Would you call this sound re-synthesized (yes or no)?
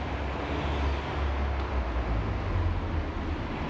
no